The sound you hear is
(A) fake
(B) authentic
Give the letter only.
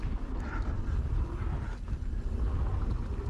B